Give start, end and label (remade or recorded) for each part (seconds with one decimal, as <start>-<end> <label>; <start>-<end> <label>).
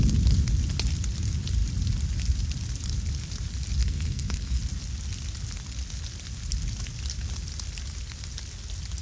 0.0-3.8 recorded; 3.8-4.6 remade; 4.6-9.0 recorded